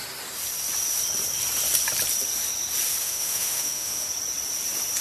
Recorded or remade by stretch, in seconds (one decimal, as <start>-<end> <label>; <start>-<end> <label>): 0.0-3.0 recorded; 3.0-4.1 remade; 4.1-5.0 recorded